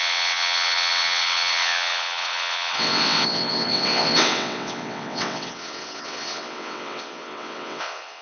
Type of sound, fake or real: fake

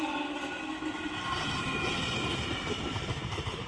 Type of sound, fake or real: real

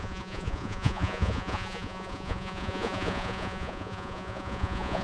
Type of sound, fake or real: fake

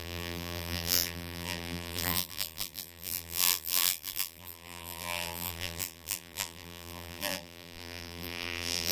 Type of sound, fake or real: fake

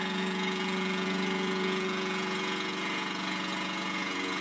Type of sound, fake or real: fake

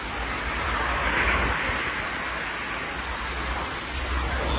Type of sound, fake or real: real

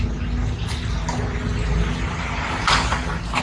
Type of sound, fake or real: real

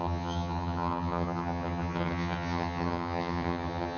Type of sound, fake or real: fake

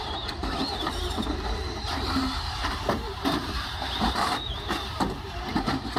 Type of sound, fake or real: fake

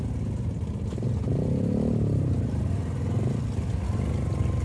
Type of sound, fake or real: real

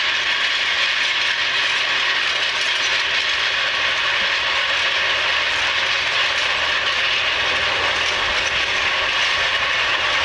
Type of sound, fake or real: real